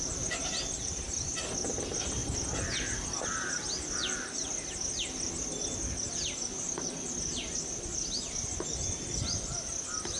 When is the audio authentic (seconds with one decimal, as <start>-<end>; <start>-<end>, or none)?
0.0-10.2